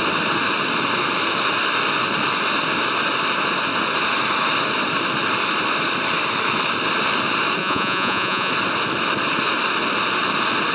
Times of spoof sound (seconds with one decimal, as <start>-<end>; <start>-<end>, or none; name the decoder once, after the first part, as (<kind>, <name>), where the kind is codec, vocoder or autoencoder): 7.6-8.5 (vocoder, Vocos)